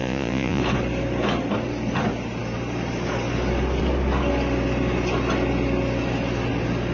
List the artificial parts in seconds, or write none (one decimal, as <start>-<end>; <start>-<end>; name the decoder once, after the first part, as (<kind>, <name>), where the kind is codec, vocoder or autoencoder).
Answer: 0.0-0.6 (vocoder, Vocos)